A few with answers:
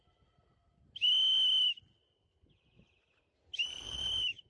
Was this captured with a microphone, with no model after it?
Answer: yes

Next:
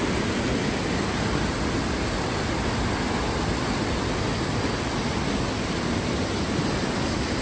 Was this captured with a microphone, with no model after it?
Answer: yes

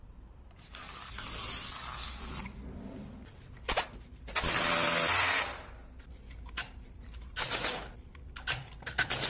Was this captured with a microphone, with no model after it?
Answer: yes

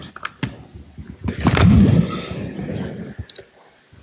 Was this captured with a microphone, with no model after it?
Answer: yes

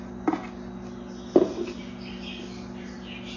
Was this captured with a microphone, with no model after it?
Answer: yes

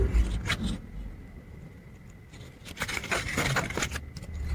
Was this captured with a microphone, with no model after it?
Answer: yes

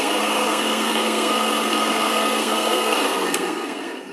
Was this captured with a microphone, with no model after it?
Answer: no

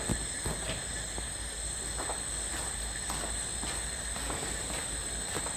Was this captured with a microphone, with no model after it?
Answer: yes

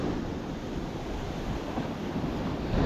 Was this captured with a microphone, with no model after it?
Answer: no